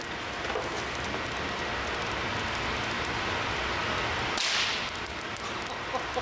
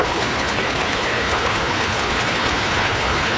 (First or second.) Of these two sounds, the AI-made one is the second